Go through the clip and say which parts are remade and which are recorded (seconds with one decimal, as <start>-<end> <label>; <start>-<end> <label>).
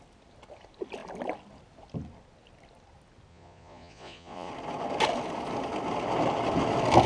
0.0-3.3 recorded; 3.3-4.5 remade; 4.5-7.1 recorded